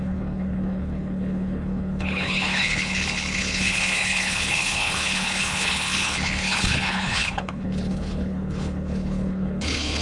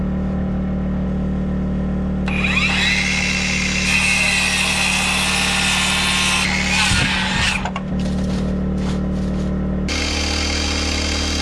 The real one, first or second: second